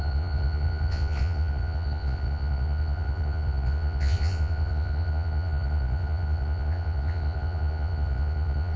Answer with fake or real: fake